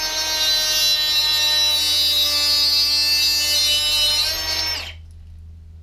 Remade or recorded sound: recorded